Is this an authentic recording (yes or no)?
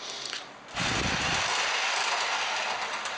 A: yes